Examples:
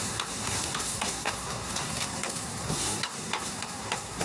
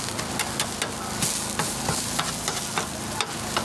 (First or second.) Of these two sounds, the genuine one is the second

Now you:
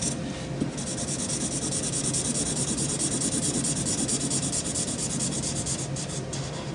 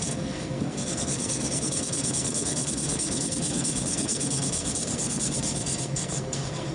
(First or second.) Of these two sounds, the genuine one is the first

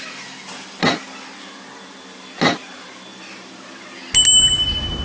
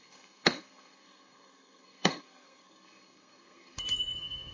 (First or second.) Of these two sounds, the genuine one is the first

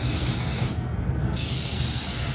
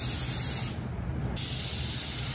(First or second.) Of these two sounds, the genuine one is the second